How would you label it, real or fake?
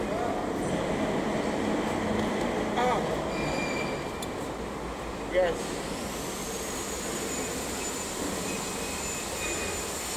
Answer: real